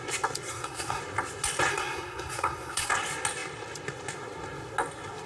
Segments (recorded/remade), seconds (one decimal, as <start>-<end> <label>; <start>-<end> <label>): 0.0-0.5 recorded; 0.5-1.0 remade; 1.0-1.7 recorded; 1.7-2.9 remade; 2.9-5.3 recorded